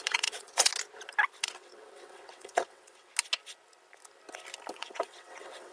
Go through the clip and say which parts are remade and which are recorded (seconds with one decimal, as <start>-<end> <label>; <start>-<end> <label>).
0.0-0.7 remade; 0.7-1.4 recorded; 1.4-3.1 remade; 3.1-4.7 recorded; 4.7-5.7 remade